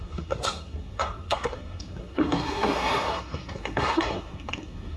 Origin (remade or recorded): remade